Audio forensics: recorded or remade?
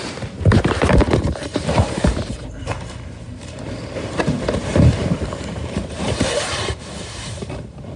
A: remade